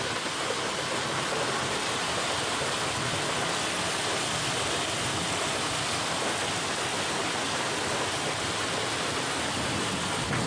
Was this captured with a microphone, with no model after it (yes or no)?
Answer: yes